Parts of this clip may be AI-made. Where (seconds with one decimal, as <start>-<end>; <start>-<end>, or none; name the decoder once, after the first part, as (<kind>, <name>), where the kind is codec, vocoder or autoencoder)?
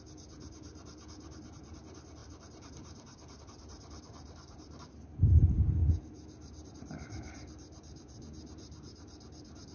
0.0-5.8 (vocoder, BigVGAN v2); 6.7-9.7